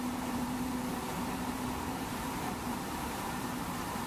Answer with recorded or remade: remade